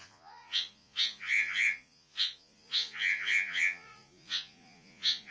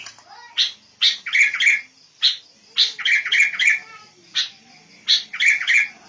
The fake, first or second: first